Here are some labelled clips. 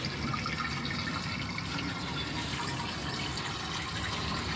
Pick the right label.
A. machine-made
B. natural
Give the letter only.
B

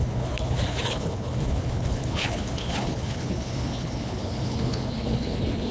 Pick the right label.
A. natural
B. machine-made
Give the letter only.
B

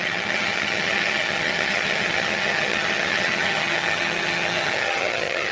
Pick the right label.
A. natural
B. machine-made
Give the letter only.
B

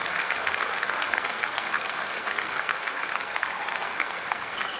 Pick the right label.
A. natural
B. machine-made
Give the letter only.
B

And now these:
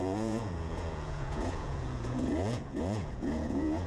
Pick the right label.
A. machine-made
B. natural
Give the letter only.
A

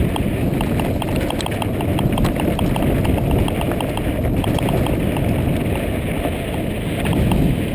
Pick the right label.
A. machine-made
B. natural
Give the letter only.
B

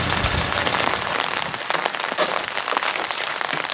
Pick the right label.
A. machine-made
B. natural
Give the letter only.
B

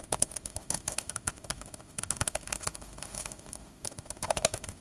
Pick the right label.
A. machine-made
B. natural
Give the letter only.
A